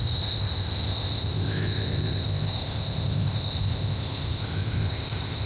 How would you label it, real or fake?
fake